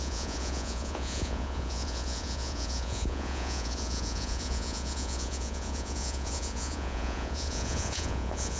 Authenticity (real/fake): fake